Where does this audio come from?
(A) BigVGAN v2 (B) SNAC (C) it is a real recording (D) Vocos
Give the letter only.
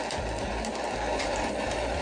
C